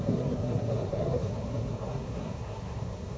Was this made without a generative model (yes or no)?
no